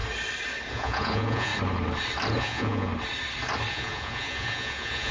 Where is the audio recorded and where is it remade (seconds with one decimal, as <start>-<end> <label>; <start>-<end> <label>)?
0.0-0.7 recorded; 0.7-1.5 remade; 1.5-2.4 recorded; 2.4-2.9 remade; 2.9-3.7 recorded; 3.7-5.1 remade